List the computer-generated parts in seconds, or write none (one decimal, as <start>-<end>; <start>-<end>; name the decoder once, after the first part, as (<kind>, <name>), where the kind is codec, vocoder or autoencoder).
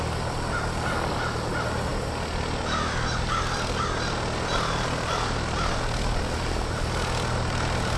none